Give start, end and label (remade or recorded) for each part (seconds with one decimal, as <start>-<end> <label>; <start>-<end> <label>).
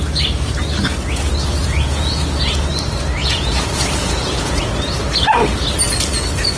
0.0-1.6 recorded; 1.6-2.7 remade; 2.7-3.2 recorded; 3.2-4.6 remade; 4.6-6.6 recorded